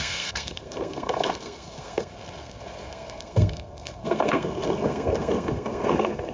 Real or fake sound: fake